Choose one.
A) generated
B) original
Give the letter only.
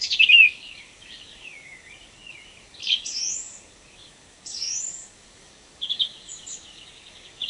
A